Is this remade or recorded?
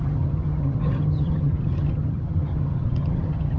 remade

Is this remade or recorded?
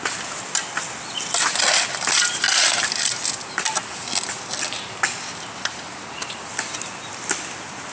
recorded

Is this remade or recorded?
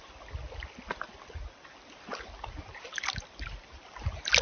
recorded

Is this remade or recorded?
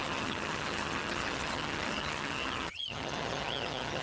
remade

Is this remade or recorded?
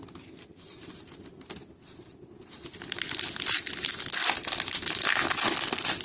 recorded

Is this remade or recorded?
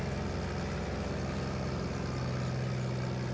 recorded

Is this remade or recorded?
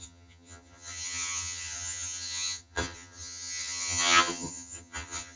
remade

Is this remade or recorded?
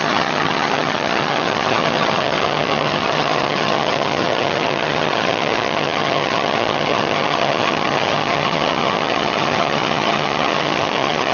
remade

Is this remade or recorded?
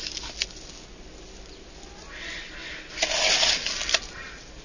recorded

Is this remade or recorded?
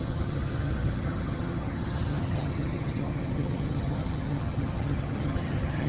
remade